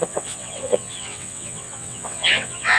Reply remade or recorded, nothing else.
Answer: remade